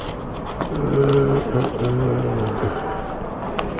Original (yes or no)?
yes